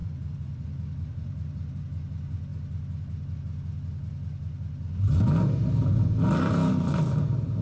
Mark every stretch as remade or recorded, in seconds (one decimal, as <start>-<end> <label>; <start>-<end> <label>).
0.0-1.8 remade; 1.8-7.6 recorded